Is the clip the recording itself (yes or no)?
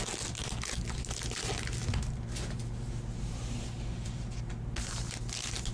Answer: yes